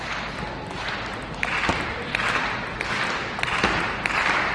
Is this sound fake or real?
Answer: real